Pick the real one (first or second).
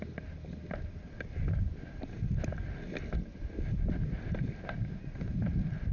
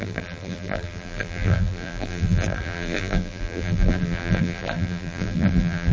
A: first